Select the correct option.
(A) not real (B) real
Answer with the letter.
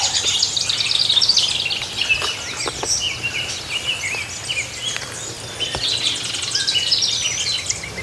B